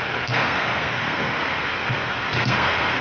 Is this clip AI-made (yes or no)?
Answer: yes